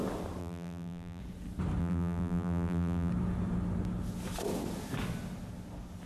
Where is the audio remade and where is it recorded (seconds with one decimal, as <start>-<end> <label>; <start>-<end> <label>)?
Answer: 0.0-0.4 recorded; 0.4-1.2 remade; 1.2-1.8 recorded; 1.8-3.1 remade; 3.1-6.1 recorded